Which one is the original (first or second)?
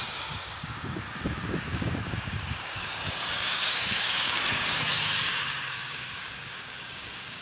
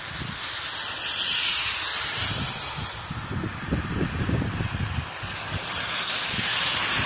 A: second